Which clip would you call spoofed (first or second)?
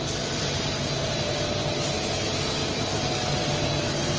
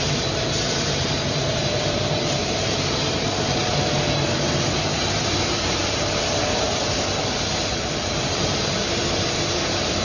second